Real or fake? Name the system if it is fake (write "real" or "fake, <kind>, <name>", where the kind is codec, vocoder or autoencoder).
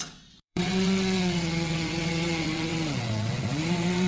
fake, vocoder, WaveNeXt